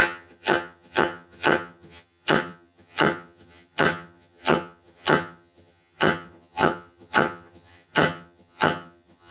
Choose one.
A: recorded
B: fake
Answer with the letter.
B